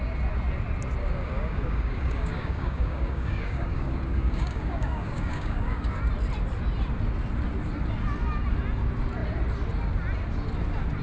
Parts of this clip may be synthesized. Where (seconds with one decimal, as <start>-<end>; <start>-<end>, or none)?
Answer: 1.0-6.0